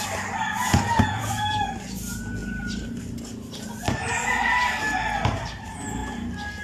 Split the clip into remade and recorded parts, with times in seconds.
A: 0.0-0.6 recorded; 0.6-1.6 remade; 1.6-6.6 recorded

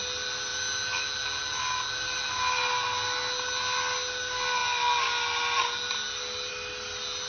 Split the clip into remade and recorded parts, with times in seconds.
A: 0.0-7.3 recorded

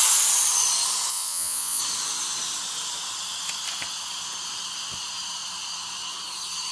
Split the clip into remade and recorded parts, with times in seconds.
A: 0.0-1.1 recorded; 1.1-1.8 remade; 1.8-6.7 recorded

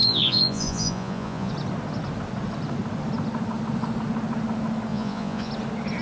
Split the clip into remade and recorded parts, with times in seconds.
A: 0.0-1.5 remade; 1.5-4.9 recorded; 4.9-5.5 remade; 5.5-6.0 recorded

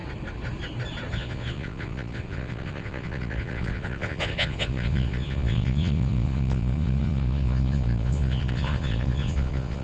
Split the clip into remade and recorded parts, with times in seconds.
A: 0.0-1.1 recorded; 1.1-9.8 remade

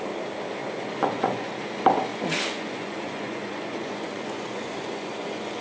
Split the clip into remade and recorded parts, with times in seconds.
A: 0.0-0.6 recorded; 0.6-1.5 remade; 1.5-2.1 recorded; 2.1-5.6 remade